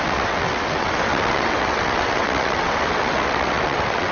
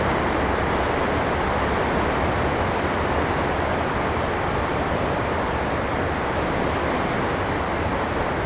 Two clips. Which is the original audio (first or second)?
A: second